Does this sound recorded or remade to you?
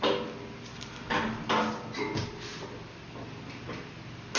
recorded